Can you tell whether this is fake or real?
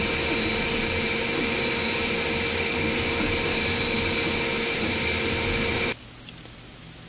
real